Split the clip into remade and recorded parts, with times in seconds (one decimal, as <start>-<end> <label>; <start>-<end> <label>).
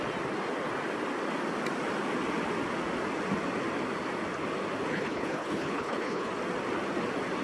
0.0-4.9 recorded; 4.9-6.3 remade; 6.3-7.4 recorded